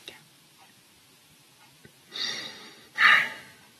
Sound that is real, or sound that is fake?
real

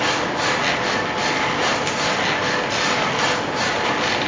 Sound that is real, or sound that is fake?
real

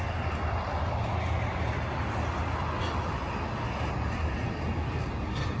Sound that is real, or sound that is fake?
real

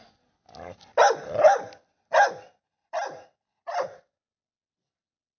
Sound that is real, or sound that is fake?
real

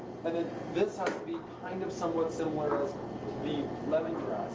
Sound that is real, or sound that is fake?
real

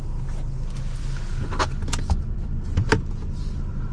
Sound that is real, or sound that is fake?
real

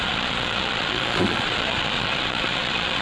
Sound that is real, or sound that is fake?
fake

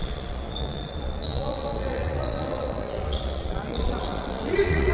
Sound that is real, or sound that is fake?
fake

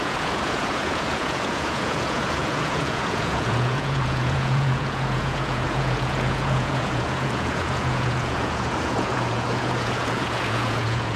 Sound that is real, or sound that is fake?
fake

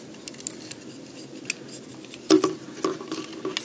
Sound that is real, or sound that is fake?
real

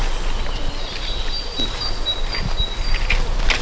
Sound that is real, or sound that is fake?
real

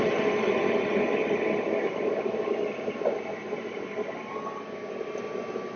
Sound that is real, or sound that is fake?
real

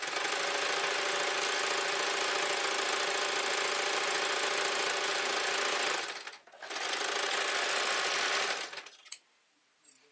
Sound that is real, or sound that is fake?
real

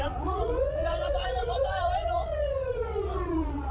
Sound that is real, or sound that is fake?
fake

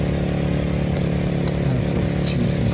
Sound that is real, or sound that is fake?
real